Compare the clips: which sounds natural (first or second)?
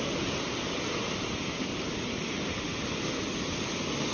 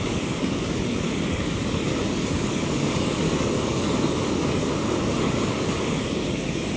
first